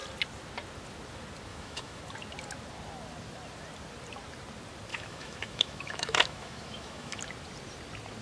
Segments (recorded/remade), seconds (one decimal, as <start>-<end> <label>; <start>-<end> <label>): 0.0-1.5 recorded; 1.5-2.0 remade; 2.0-4.9 recorded; 4.9-7.2 remade; 7.2-8.2 recorded

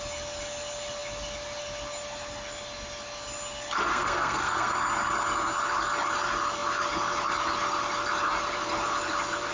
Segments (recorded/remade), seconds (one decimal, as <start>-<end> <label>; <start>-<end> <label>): 0.0-3.9 recorded; 3.9-4.7 remade; 4.7-9.5 recorded

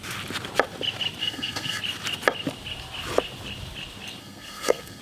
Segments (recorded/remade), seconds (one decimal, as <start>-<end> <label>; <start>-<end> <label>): 0.0-1.2 recorded; 1.2-1.8 remade; 1.8-4.2 recorded; 4.2-5.0 remade

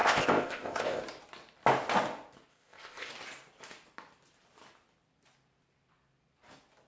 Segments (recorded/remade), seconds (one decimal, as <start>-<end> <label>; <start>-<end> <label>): 0.0-1.0 remade; 1.0-2.5 recorded; 2.5-3.1 remade; 3.1-6.9 recorded

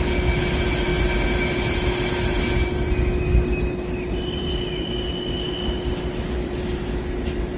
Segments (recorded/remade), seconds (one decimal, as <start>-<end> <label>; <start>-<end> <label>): 0.0-7.6 recorded